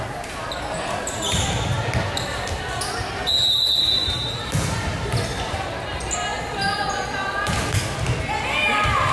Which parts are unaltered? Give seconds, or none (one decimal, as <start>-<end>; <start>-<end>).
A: 0.0-9.1